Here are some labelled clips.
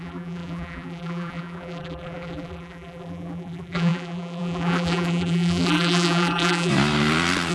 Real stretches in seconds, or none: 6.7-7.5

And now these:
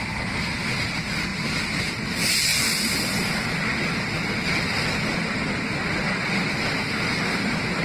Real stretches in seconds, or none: 0.0-1.3; 1.9-7.8

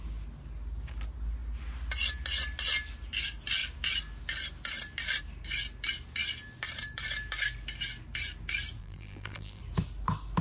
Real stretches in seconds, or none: 0.0-8.8; 9.6-10.4

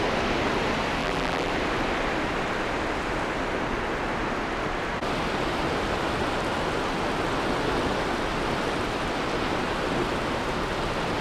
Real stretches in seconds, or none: 0.0-1.0; 1.5-11.2

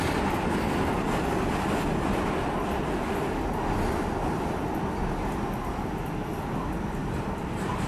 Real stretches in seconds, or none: 0.0-7.0

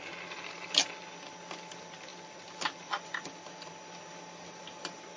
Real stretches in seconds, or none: 0.0-5.2

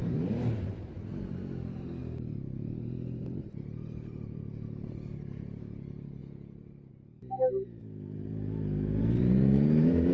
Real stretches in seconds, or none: 6.2-6.9